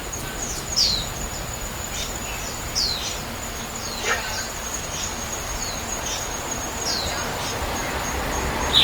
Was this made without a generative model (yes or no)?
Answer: yes